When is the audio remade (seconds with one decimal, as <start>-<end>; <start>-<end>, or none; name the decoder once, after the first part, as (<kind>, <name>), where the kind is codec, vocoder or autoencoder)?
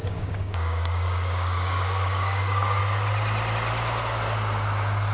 0.0-2.8 (codec, DAC)